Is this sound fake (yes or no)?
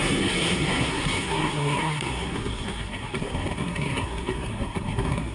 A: yes